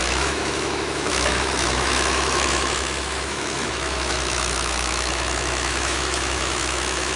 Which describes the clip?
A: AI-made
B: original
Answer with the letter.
A